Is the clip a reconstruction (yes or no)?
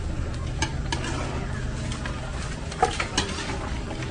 no